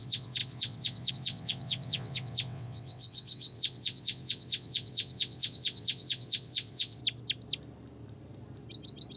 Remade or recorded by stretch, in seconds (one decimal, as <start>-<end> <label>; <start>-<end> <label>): 0.0-7.0 remade; 7.0-9.2 recorded